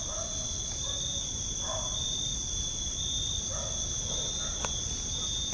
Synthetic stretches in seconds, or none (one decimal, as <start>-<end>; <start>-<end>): 1.2-2.9